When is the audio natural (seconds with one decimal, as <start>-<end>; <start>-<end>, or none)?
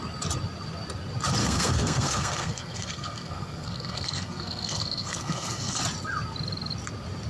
0.0-1.4; 5.8-7.3